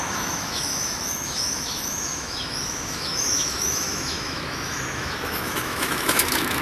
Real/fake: fake